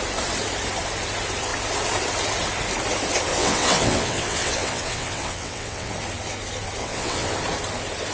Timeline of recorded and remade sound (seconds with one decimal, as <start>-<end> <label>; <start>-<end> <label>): 0.0-3.3 recorded; 3.3-5.9 remade; 5.9-6.8 recorded; 6.8-7.3 remade; 7.3-8.1 recorded